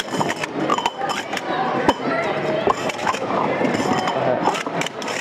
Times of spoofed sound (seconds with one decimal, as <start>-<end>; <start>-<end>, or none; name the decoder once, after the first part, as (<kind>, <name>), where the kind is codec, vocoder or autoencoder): 3.0-3.5 (autoencoder, DAC-VAE)